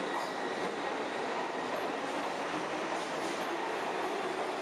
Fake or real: real